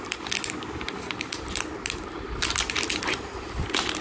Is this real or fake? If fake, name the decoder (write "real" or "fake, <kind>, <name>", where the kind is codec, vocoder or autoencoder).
real